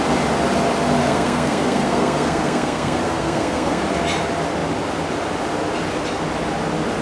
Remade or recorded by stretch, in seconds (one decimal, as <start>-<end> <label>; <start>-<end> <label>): 0.0-1.0 recorded; 1.0-3.8 remade; 3.8-7.0 recorded